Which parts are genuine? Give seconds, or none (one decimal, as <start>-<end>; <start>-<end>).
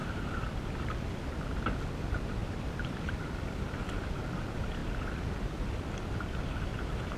1.2-2.4; 3.3-4.8; 5.5-6.7